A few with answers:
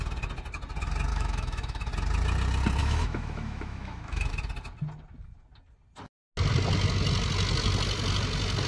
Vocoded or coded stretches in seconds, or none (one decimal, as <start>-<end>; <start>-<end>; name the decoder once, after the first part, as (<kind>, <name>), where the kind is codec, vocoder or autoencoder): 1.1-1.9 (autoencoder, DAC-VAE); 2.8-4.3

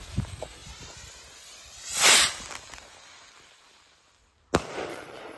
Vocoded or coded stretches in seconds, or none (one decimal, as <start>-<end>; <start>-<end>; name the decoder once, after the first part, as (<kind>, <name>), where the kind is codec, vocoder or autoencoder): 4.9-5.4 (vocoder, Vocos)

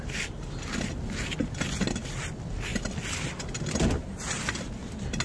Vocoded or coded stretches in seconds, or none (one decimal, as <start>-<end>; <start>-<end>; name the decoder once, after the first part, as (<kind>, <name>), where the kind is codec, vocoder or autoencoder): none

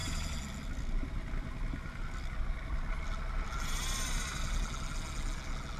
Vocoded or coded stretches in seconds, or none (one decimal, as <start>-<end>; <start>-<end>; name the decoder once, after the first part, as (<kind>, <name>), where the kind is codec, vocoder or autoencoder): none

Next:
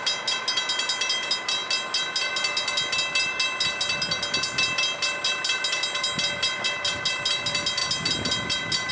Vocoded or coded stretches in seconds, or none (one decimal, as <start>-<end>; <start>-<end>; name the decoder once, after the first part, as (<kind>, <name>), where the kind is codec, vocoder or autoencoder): none

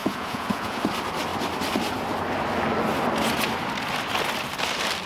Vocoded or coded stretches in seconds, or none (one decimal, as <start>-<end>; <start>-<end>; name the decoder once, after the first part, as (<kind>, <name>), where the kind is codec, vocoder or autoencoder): 0.0-0.8 (vocoder, Vocos)